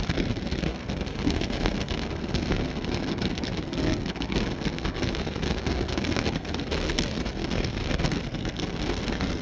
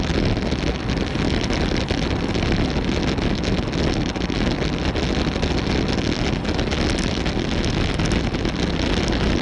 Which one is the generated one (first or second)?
first